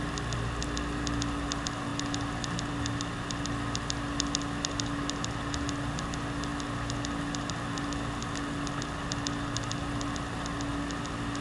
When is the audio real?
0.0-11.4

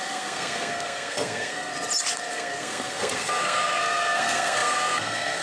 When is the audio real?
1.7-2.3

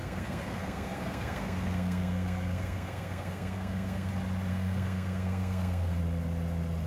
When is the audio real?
4.1-4.5; 6.0-6.9

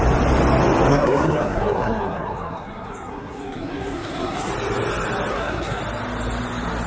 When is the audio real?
0.0-0.9; 4.5-5.3; 5.8-6.9